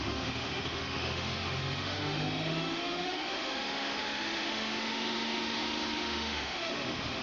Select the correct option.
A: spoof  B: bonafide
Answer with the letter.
A